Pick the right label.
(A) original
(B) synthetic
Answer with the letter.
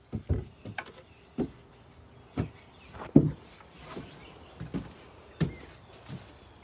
A